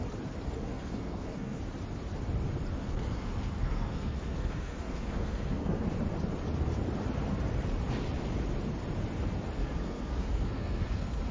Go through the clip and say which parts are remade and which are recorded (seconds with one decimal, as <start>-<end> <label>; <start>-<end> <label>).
0.0-0.6 recorded; 0.6-1.6 remade; 1.6-2.8 recorded; 2.8-5.8 remade; 5.8-9.6 recorded; 9.6-11.3 remade